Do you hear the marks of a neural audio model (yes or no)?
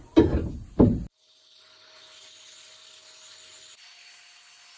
no